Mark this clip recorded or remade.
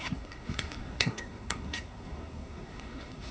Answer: remade